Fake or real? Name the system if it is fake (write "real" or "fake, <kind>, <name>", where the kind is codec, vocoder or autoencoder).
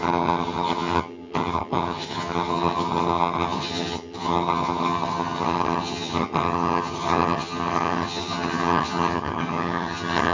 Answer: fake, vocoder, HiFi-GAN